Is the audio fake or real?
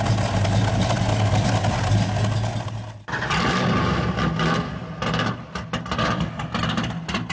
real